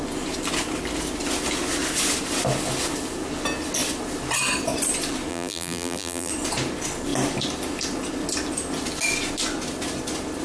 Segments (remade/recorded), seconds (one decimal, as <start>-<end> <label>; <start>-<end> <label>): 0.0-5.3 recorded; 5.3-6.3 remade; 6.3-10.4 recorded